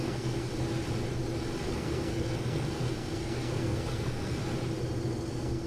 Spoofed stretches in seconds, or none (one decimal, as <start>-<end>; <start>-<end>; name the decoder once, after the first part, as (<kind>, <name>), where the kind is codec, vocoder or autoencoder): 0.0-0.5 (codec, SNAC); 1.7-4.4; 5.3-5.7